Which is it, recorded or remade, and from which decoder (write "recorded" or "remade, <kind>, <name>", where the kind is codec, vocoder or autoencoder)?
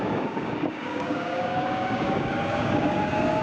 remade, codec, DAC